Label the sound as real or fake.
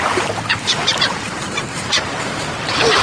fake